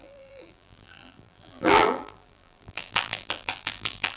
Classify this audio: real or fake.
fake